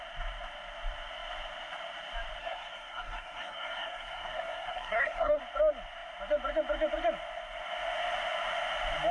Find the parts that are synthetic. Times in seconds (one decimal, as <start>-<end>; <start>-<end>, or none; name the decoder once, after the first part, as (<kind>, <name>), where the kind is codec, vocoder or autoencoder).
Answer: 2.4-5.4 (codec, SNAC)

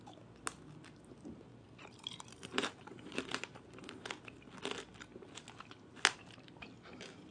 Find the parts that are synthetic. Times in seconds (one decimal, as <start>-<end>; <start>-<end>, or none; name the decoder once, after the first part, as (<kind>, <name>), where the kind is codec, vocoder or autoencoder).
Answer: 1.5-3.9 (vocoder, BigVGAN v2)

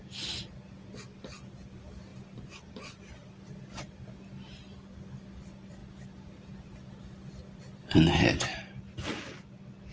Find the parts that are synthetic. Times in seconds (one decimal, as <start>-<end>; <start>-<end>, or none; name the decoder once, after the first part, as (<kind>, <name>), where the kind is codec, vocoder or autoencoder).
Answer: none

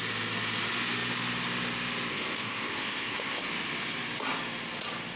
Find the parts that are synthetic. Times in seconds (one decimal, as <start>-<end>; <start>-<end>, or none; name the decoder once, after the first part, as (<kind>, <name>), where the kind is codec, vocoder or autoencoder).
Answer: 2.1-3.4 (codec, ZipCodec)

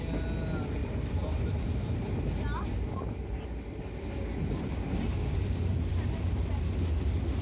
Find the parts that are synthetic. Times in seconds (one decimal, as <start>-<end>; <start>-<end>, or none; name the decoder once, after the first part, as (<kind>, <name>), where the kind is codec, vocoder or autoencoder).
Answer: 0.8-1.8 (vocoder, BigVGAN v2); 5.9-6.6

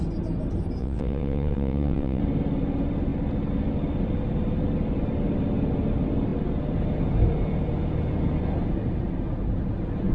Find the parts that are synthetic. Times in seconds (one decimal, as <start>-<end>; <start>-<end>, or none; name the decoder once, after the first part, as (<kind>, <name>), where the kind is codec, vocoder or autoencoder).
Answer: 0.8-2.2 (vocoder, WaveNeXt)